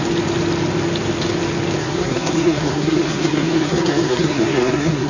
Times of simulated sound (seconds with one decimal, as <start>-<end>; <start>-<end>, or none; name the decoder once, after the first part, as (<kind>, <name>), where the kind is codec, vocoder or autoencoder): 1.8-5.1 (codec, SNAC)